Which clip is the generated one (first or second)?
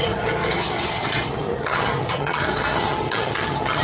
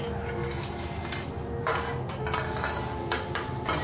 first